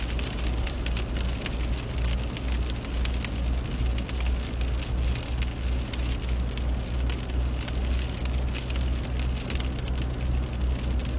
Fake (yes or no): no